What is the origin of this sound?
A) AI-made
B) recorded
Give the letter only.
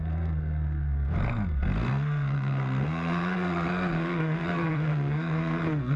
A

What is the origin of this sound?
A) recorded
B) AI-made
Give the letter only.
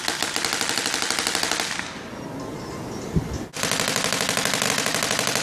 A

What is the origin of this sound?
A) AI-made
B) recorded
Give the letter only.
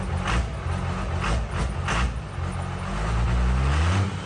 B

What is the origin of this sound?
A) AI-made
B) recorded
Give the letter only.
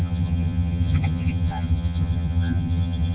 A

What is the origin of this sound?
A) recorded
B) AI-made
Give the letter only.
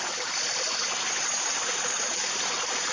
A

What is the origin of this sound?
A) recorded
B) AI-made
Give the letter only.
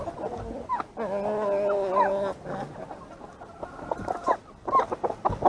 A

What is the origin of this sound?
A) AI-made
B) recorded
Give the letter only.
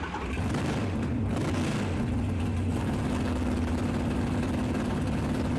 B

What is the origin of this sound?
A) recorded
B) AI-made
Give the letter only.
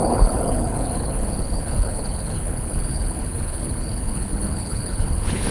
B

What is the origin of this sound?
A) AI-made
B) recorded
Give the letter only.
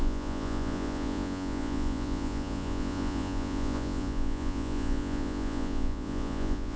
A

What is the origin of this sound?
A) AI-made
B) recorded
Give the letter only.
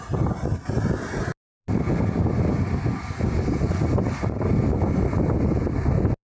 B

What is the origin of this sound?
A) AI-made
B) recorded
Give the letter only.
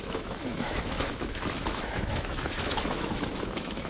A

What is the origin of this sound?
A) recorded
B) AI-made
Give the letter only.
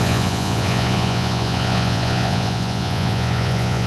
B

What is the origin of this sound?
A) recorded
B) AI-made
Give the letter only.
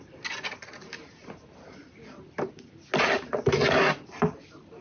A